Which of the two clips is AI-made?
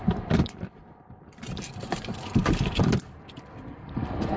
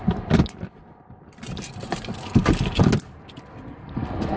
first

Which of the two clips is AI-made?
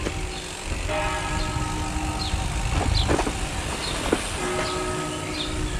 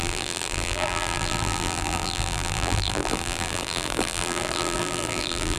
second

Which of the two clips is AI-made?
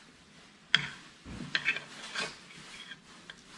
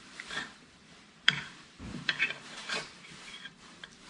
second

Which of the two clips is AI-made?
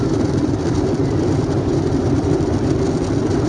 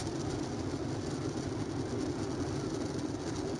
first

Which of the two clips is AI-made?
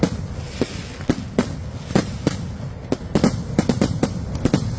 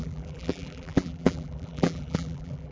second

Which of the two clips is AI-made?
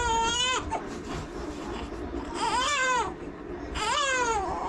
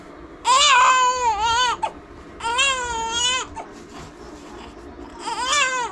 first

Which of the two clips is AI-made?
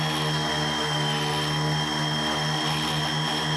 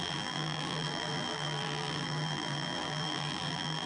second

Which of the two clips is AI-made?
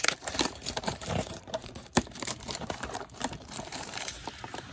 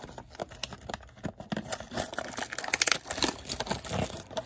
first